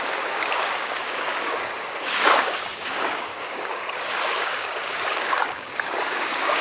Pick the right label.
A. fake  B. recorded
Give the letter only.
A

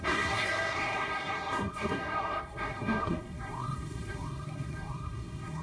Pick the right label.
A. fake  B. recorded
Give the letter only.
A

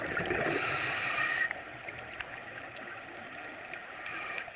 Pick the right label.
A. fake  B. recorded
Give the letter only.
A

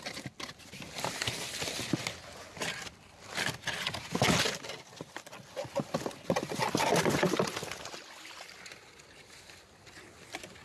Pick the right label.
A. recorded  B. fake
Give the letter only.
A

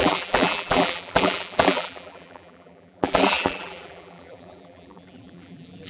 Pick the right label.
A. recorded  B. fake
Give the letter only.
B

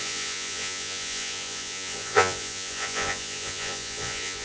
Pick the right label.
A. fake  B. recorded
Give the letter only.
A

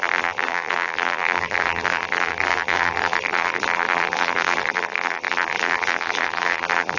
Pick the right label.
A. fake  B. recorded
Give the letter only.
A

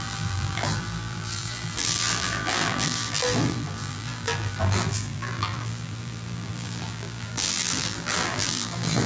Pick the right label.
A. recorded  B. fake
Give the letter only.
B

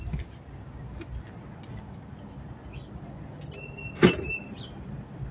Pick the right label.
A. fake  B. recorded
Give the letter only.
B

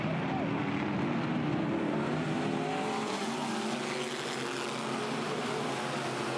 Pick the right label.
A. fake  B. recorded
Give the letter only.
B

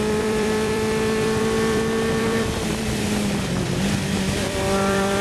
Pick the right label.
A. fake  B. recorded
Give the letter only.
A